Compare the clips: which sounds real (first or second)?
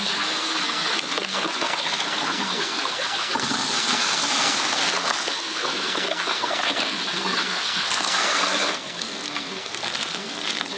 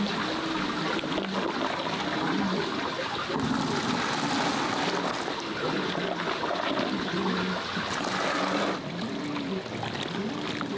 second